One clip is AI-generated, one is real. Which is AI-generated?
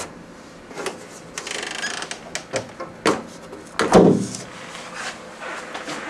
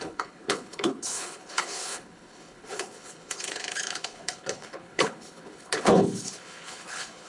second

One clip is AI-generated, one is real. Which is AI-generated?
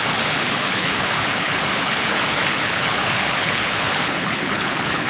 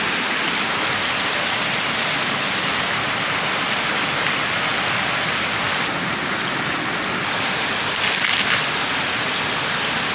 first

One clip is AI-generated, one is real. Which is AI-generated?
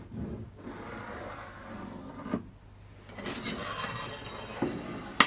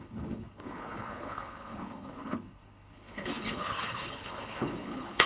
second